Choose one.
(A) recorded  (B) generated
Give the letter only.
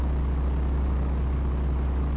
A